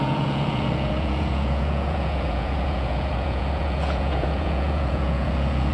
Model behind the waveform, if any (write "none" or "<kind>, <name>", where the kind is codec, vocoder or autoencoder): vocoder, Vocos